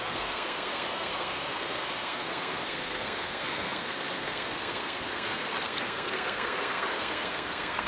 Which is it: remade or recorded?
remade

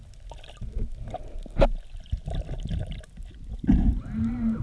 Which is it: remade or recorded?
recorded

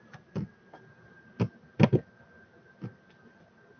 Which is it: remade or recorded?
recorded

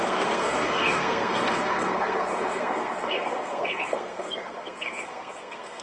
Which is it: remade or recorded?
remade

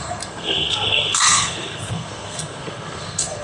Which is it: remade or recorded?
remade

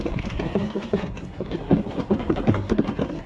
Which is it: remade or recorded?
remade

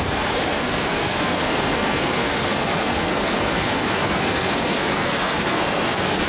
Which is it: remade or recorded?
remade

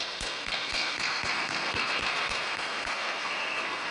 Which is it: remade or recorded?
remade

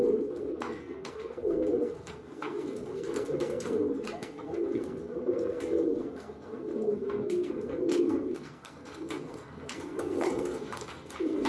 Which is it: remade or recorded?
remade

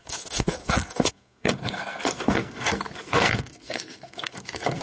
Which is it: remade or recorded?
remade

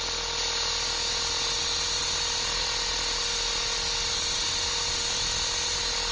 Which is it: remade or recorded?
recorded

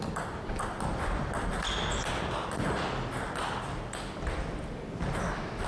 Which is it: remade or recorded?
recorded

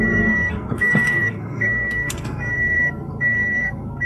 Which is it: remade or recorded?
remade